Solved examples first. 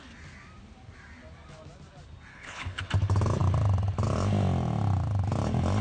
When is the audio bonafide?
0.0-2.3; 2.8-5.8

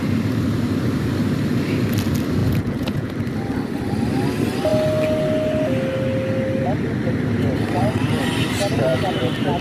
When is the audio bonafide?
0.0-2.4; 3.1-9.6

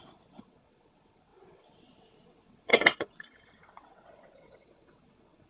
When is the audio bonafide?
none